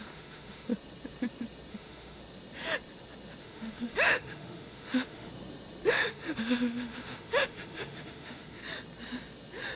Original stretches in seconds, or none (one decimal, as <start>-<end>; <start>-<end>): 0.7-1.7; 2.2-3.4; 5.3-5.9; 8.6-9.8